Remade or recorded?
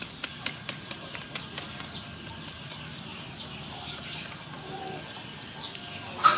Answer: recorded